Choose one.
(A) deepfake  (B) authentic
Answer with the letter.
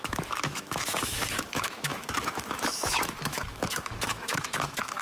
A